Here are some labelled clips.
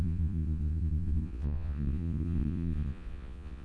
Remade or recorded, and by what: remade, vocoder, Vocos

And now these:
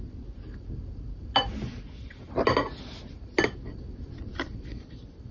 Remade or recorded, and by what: recorded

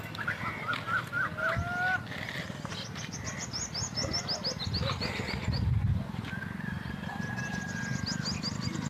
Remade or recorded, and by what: recorded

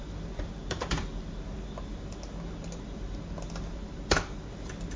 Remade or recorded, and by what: recorded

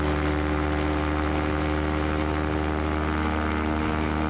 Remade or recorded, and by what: recorded